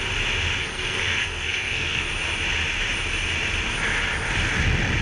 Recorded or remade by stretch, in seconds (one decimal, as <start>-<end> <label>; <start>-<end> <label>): 0.0-0.6 recorded; 0.6-2.1 remade; 2.1-5.0 recorded